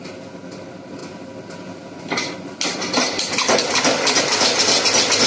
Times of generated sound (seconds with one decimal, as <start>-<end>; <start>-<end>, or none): none